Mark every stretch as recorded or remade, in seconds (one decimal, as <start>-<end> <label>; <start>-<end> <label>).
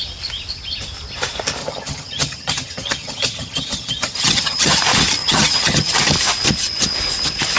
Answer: 0.0-1.6 recorded; 1.6-4.8 remade; 4.8-5.2 recorded; 5.2-5.9 remade; 5.9-7.6 recorded